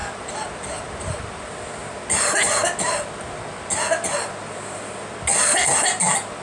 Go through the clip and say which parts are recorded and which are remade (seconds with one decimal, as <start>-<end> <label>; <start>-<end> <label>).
0.0-6.4 recorded